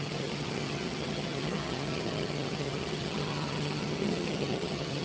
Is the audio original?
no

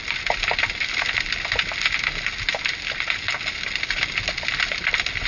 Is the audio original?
yes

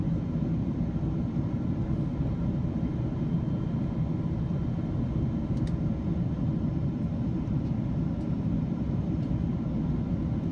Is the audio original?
yes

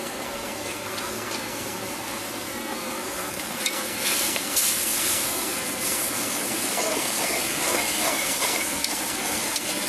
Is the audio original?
no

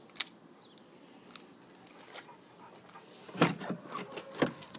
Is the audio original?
yes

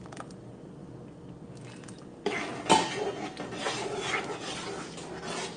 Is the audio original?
yes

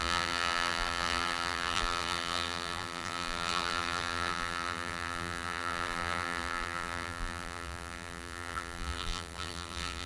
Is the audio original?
no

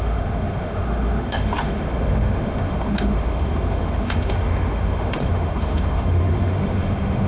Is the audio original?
no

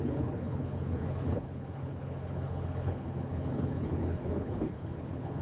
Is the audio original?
no